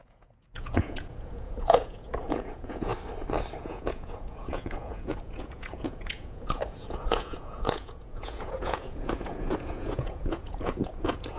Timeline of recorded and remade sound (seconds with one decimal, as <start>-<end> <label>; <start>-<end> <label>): 0.0-2.9 remade; 2.9-3.6 recorded; 3.6-11.4 remade